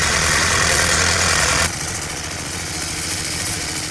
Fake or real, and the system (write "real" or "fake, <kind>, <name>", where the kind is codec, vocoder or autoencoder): fake, vocoder, Vocos